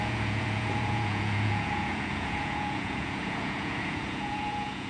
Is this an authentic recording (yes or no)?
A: no